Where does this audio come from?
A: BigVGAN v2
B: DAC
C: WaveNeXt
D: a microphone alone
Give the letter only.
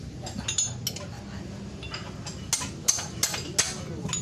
D